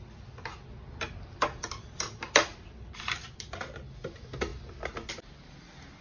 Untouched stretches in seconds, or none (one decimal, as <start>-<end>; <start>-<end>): 0.0-6.0